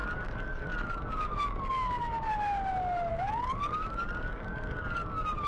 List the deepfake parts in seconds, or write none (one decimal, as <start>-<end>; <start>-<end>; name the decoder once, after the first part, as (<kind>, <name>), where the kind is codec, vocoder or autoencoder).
0.0-2.3 (codec, DAC); 3.1-5.5